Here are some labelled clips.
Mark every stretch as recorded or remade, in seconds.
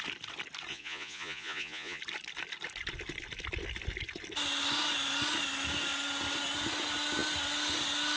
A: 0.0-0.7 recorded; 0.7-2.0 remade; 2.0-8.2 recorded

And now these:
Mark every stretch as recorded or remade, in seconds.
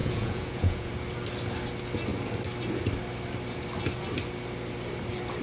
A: 0.0-0.9 remade; 0.9-5.4 recorded